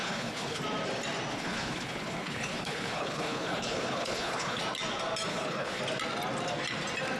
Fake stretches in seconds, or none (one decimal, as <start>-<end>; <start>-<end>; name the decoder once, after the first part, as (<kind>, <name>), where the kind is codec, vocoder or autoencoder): 0.0-0.6 (codec, HILCodec); 1.3-4.6; 5.3-5.8